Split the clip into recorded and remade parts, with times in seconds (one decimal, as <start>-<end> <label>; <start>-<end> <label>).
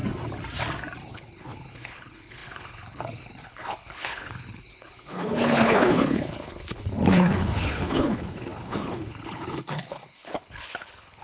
0.0-1.1 recorded; 1.1-11.2 remade